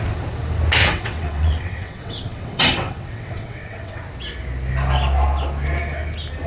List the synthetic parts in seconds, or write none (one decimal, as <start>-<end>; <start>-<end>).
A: 0.8-4.0